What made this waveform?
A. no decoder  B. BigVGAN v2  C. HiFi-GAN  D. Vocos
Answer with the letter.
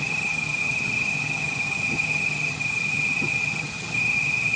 C